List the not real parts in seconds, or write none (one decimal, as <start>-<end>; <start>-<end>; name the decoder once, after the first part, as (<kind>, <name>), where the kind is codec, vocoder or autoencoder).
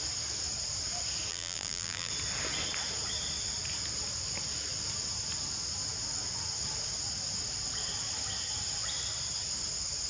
1.3-2.1 (vocoder, BigVGAN v2)